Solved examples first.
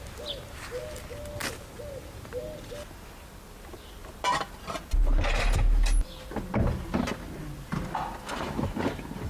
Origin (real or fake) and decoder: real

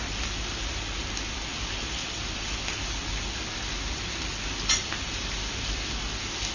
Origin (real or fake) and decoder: real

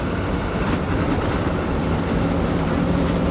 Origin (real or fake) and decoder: fake, vocoder, BigVGAN v2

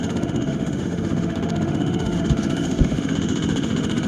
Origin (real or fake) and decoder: fake, autoencoder, DAC-VAE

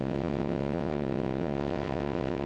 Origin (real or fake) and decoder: fake, vocoder, WaveNeXt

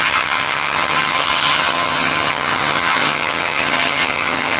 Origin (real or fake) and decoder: fake, vocoder, HiFi-GAN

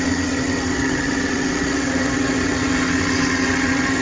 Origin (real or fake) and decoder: fake, vocoder, WaveNeXt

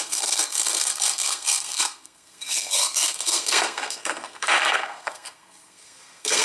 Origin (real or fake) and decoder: fake, codec, SNAC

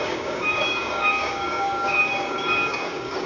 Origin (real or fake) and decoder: fake, codec, DAC